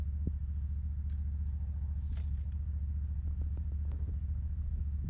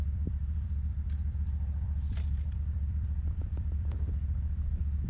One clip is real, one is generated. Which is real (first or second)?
first